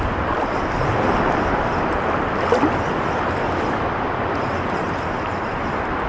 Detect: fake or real real